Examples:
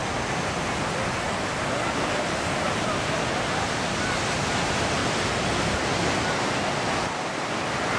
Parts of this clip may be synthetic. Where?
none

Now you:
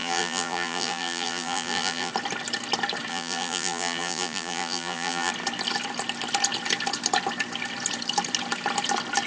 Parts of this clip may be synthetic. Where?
0.0-2.1; 3.1-5.3

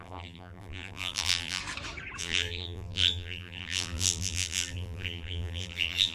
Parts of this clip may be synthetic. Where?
0.0-1.6; 2.2-6.1

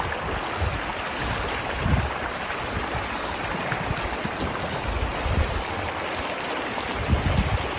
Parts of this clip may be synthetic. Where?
5.1-6.9

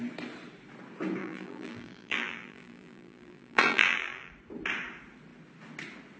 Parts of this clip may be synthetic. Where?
1.2-4.3

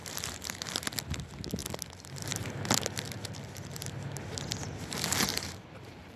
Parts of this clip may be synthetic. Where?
0.0-0.9; 5.3-6.2

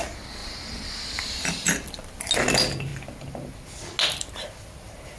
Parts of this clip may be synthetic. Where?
0.4-2.3